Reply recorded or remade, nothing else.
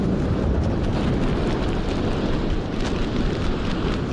recorded